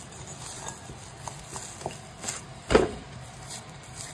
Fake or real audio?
real